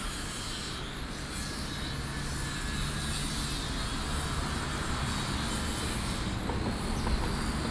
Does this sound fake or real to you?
real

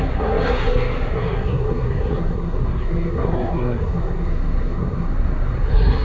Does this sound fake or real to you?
fake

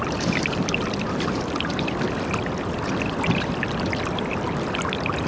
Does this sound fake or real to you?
real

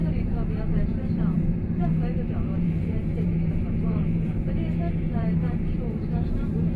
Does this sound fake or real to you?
fake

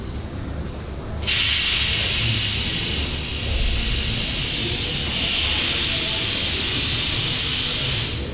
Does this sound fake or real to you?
real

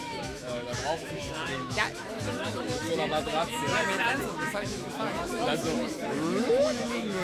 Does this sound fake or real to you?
fake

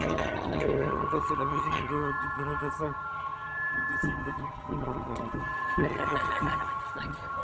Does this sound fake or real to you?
fake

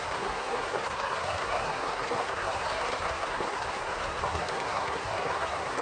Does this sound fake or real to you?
fake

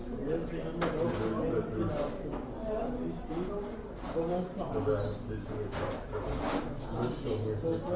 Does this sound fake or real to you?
real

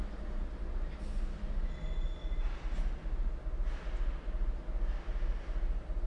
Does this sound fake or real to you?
real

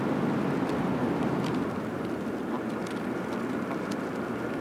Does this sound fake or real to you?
real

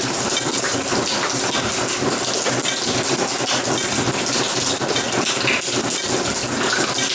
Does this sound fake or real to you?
real